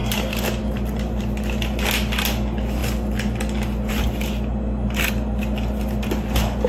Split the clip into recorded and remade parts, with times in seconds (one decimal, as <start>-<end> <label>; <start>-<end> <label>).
0.0-6.7 recorded